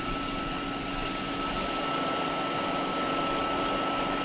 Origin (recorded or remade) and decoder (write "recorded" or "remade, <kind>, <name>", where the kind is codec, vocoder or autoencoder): recorded